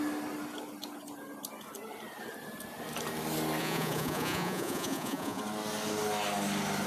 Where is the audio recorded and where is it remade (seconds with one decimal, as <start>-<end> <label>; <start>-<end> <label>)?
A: 0.0-3.6 recorded; 3.6-5.4 remade; 5.4-6.9 recorded